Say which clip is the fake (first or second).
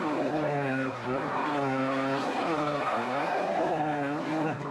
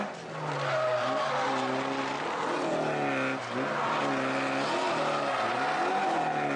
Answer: first